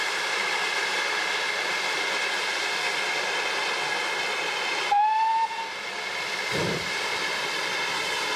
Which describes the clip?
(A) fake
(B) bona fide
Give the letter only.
A